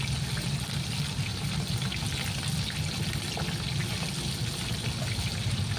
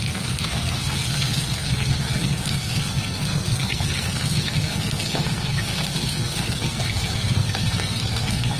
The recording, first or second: first